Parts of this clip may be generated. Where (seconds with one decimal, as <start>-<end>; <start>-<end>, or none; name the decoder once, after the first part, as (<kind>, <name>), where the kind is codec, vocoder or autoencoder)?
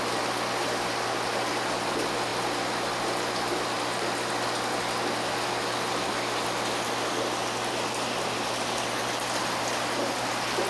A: none